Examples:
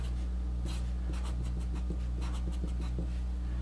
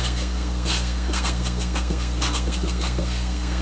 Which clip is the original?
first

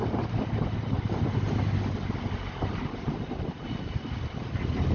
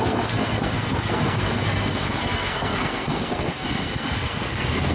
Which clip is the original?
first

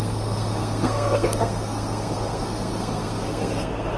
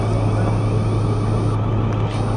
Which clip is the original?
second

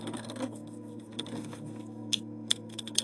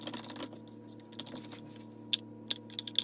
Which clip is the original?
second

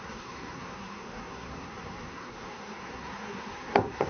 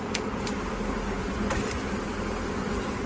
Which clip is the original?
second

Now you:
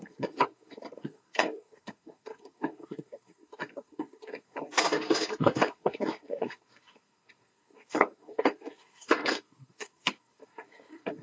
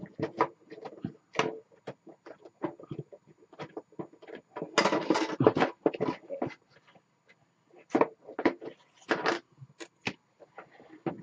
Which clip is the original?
second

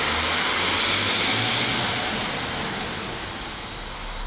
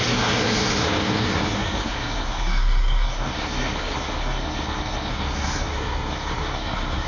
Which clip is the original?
first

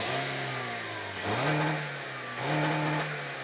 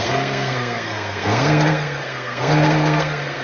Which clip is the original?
first